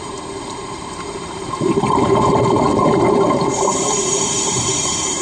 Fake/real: fake